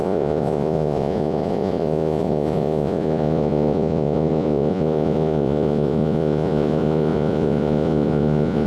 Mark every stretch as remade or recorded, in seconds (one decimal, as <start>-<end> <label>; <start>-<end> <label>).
0.0-8.7 remade